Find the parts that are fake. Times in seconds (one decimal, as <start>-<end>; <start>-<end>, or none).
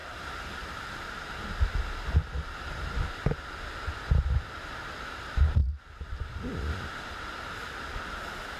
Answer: none